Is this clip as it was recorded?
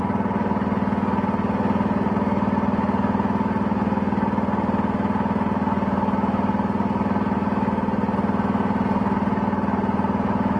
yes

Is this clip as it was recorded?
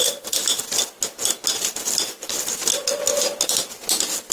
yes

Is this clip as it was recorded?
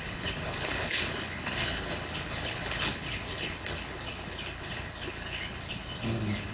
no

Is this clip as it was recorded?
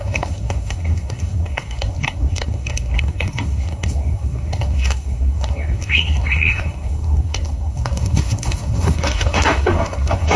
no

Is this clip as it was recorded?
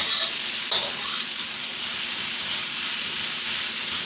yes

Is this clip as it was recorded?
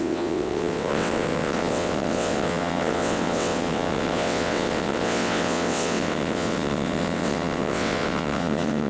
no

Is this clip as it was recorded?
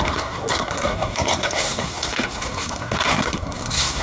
no